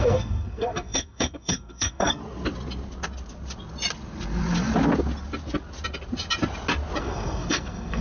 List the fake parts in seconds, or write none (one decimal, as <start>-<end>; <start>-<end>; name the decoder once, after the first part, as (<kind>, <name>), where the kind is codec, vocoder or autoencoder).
0.0-2.2 (codec, SNAC); 7.0-8.0